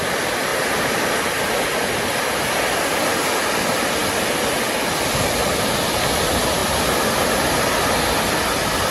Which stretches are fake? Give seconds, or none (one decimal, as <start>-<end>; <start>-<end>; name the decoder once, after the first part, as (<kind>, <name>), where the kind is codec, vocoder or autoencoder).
none